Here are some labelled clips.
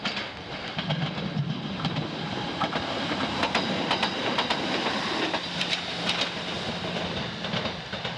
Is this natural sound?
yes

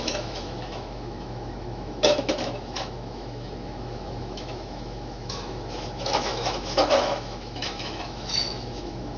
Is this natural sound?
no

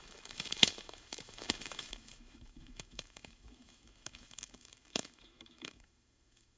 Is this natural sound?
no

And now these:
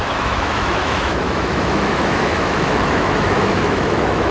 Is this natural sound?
no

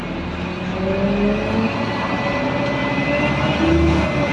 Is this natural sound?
yes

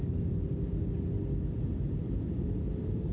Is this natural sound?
yes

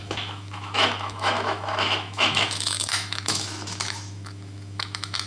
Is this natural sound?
no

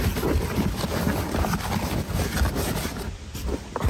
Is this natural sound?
yes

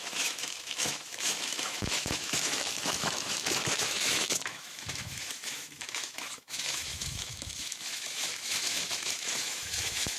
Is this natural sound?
no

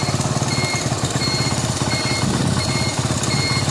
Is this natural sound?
yes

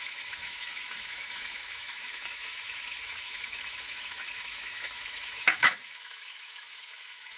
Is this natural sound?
no